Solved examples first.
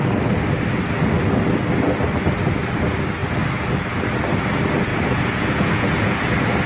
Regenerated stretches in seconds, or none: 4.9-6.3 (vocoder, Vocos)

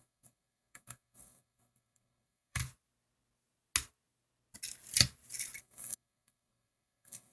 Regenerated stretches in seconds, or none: 0.0-2.6 (codec, SNAC); 5.6-7.3

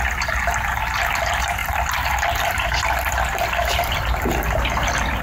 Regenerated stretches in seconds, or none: 1.6-4.0 (vocoder, BigVGAN v2)

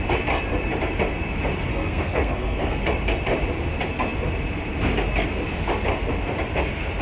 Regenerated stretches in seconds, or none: 1.7-2.8 (codec, SNAC)

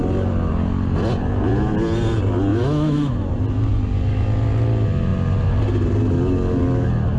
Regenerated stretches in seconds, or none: 2.5-3.3 (autoencoder, DAC-VAE)